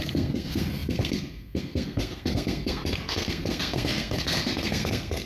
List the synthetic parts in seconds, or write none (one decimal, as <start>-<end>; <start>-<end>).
0.0-5.3